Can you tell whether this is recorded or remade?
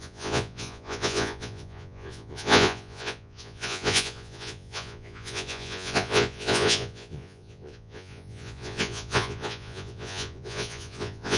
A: remade